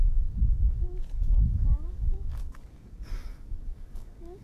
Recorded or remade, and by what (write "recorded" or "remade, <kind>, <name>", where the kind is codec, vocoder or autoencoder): remade, codec, DAC